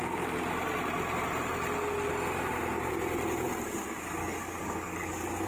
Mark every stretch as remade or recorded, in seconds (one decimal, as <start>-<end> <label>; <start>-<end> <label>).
0.0-4.2 recorded; 4.2-5.1 remade; 5.1-5.5 recorded